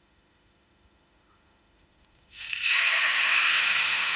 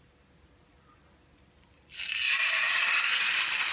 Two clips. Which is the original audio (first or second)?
second